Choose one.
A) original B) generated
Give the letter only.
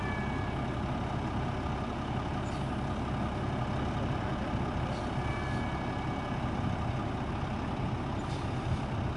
A